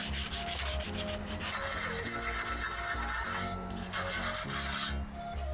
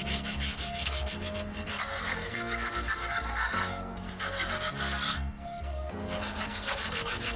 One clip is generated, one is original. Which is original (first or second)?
first